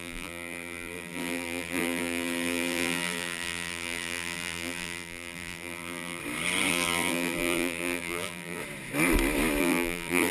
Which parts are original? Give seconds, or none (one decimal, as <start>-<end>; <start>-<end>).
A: 6.2-6.7; 8.6-9.6